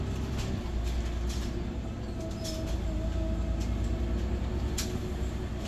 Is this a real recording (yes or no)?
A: yes